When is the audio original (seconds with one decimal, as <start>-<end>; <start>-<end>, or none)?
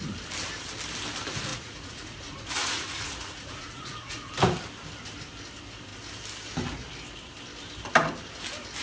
0.0-1.5; 4.3-8.8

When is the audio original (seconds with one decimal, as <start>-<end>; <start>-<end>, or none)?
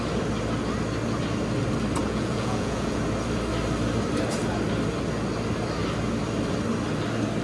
0.0-2.0; 3.0-7.4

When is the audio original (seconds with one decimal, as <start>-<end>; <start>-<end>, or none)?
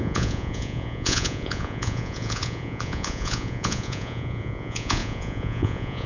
none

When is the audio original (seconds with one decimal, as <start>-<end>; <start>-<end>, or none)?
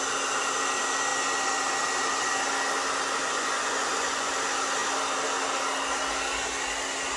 0.0-3.2; 4.3-7.2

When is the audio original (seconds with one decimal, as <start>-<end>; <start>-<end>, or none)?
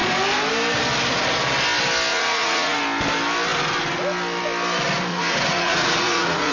0.0-2.1; 2.8-5.1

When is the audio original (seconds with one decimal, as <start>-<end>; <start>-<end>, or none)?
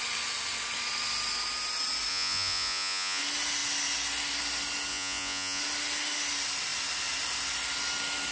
0.0-2.1; 3.2-4.9; 5.6-8.3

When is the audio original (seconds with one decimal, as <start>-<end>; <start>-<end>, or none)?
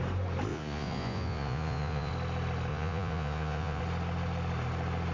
0.0-0.5; 2.1-2.7; 3.8-5.1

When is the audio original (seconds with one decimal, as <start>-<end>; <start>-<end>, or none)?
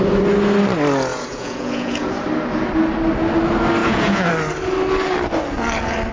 0.0-1.1; 2.2-3.8; 4.3-6.1